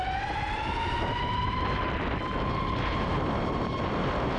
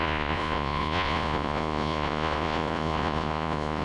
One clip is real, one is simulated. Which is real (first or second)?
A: first